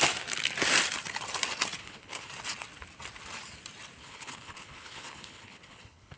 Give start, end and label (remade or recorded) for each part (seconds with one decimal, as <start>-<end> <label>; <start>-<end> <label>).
0.0-1.8 recorded; 1.8-2.3 remade; 2.3-4.0 recorded; 4.0-6.2 remade